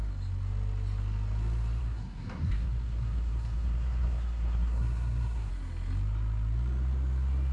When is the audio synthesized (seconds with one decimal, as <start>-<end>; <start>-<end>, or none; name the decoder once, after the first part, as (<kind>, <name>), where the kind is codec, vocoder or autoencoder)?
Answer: 1.8-5.5 (codec, SNAC)